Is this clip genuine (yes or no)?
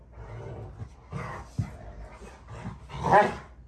yes